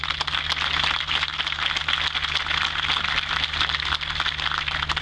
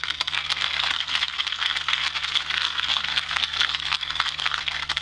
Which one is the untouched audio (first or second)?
first